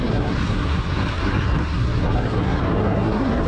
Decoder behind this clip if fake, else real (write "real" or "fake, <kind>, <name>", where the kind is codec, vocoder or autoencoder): fake, codec, SNAC